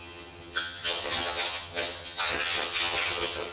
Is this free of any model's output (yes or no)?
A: no